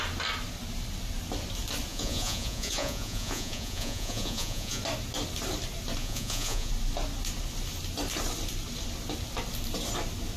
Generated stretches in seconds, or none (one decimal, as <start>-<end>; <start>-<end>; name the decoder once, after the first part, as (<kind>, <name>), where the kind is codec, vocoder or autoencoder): 1.9-4.8 (vocoder, Vocos); 6.0-6.7